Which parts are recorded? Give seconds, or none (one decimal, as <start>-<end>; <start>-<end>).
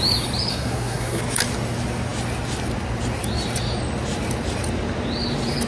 0.0-0.5; 1.2-5.7